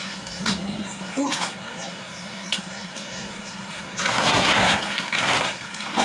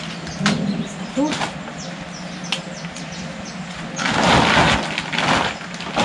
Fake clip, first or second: first